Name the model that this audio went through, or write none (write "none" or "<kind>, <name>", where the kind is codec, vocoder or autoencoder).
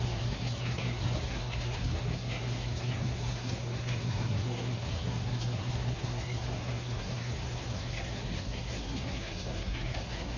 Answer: codec, SNAC